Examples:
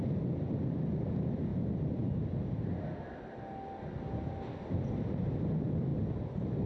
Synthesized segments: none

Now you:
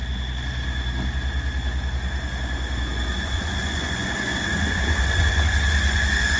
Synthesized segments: 3.2-6.4 (vocoder, Vocos)

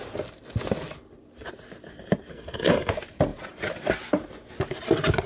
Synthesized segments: 2.3-2.9 (codec, SNAC)

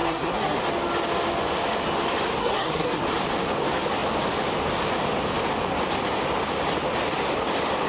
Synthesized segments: 0.0-0.6 (codec, SNAC); 2.4-3.0